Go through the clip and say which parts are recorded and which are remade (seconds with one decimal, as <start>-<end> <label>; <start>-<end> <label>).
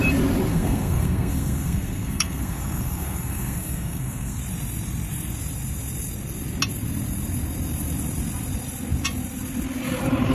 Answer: 0.0-0.5 recorded; 0.5-4.4 remade; 4.4-10.3 recorded